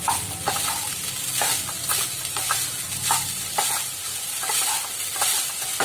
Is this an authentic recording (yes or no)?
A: yes